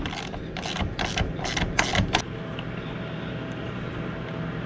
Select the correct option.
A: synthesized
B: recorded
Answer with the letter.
B